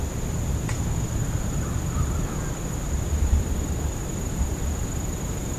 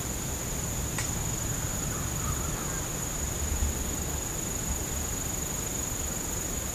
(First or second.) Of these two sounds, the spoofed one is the first